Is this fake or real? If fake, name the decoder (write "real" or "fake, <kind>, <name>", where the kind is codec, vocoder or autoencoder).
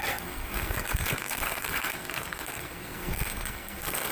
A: fake, codec, SNAC